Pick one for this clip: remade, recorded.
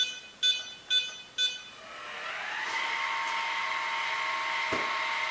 recorded